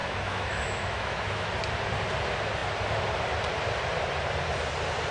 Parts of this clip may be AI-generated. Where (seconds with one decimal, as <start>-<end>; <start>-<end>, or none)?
0.0-1.5